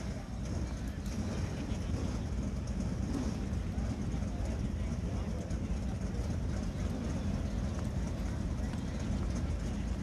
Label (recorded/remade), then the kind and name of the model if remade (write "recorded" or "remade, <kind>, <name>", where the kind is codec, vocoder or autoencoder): recorded